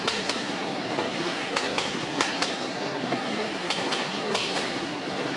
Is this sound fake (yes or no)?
yes